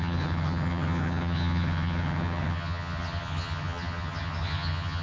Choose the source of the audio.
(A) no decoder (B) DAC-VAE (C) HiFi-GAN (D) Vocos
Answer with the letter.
C